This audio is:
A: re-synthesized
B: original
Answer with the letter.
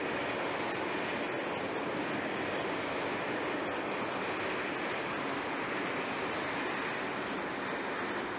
B